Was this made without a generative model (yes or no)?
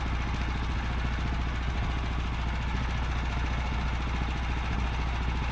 yes